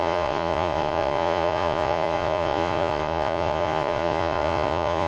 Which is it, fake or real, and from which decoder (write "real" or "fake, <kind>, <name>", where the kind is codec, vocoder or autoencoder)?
fake, vocoder, Vocos